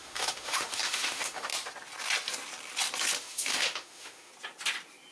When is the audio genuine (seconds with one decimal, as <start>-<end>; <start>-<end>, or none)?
1.5-3.2; 4.3-5.1

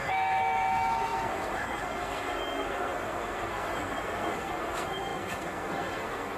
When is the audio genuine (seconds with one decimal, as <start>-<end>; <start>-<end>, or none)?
none